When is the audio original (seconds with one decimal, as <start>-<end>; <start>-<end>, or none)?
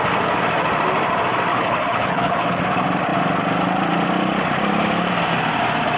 0.0-1.5; 2.6-6.0